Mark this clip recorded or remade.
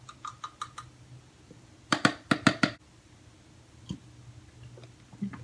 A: recorded